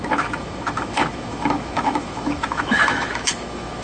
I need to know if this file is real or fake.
fake